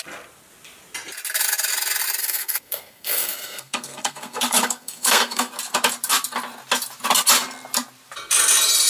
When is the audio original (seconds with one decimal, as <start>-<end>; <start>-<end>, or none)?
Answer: 0.0-2.2; 5.5-8.9